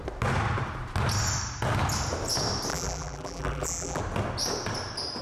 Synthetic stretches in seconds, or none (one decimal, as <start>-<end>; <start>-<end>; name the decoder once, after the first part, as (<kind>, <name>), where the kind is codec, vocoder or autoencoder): 2.7-4.0 (vocoder, BigVGAN v2)